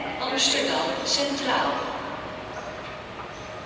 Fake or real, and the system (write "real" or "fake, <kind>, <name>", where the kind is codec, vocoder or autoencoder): real